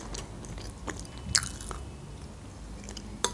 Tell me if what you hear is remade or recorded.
recorded